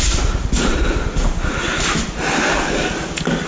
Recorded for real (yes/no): yes